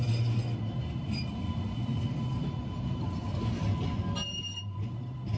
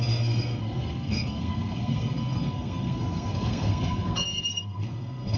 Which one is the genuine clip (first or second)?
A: first